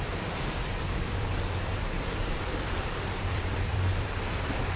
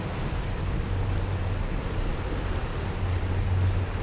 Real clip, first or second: second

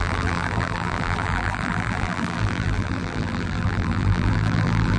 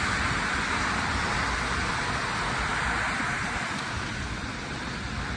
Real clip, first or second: second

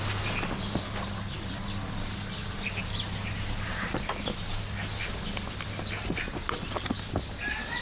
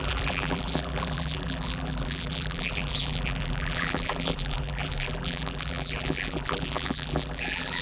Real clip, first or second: first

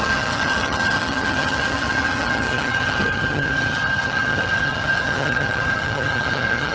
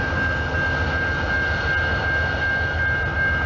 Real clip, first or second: second